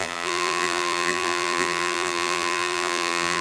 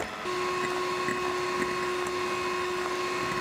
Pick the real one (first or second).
second